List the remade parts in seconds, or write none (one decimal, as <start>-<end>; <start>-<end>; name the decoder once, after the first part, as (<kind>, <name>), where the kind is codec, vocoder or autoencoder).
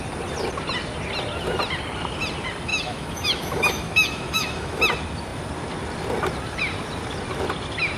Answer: 2.7-4.8 (autoencoder, DAC-VAE)